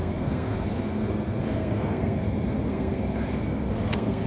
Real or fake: fake